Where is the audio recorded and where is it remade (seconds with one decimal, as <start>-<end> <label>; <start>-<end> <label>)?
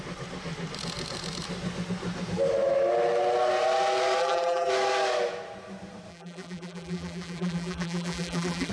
0.0-4.2 recorded; 4.2-4.7 remade; 4.7-6.1 recorded; 6.1-8.7 remade